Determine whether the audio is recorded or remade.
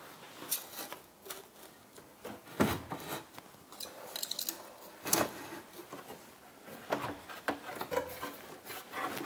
recorded